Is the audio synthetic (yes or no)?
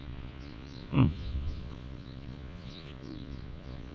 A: yes